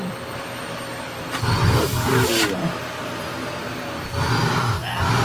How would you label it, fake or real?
fake